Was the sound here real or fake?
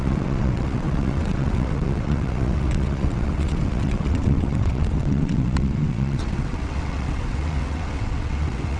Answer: fake